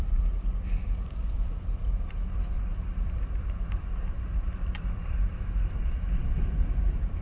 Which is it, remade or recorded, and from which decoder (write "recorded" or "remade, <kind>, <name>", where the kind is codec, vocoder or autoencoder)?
remade, vocoder, BigVGAN v2